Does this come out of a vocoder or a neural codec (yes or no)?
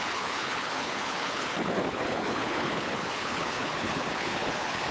yes